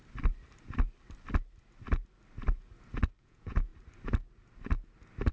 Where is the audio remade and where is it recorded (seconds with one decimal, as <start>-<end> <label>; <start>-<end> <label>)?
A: 0.0-3.2 recorded; 3.2-3.7 remade; 3.7-5.3 recorded